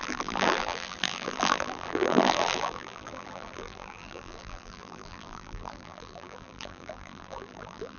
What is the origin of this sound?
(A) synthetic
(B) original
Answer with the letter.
A